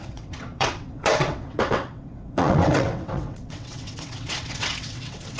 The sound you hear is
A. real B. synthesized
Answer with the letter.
B